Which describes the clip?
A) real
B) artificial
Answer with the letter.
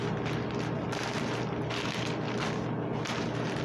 A